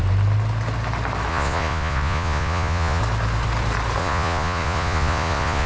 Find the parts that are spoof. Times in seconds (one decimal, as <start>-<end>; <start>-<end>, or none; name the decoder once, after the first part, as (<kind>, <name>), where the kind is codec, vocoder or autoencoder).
1.3-3.0 (vocoder, Vocos); 4.0-5.7